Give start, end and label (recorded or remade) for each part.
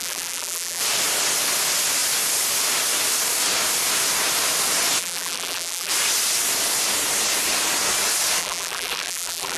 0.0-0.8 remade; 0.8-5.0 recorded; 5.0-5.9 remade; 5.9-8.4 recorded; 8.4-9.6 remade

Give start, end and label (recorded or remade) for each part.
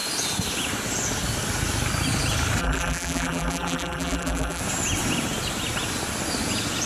0.0-2.6 recorded; 2.6-4.6 remade; 4.6-6.9 recorded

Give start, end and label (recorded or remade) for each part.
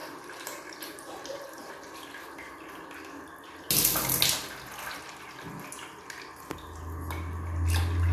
0.0-1.7 remade; 1.7-8.1 recorded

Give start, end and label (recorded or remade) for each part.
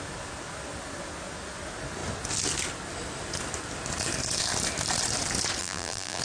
0.0-5.6 recorded; 5.6-6.2 remade